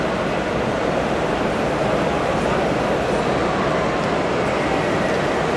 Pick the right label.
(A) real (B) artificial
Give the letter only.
A